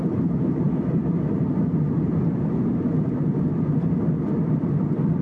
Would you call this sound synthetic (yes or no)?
no